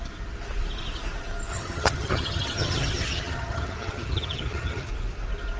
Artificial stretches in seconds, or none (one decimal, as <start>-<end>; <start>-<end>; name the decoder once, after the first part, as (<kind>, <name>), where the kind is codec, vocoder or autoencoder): 1.5-4.9 (vocoder, HiFi-GAN)